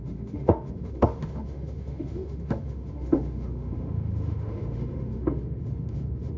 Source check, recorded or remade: remade